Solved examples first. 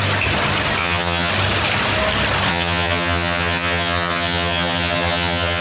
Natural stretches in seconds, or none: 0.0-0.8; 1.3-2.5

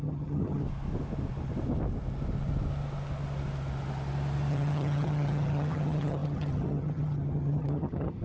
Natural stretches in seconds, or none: 0.6-4.5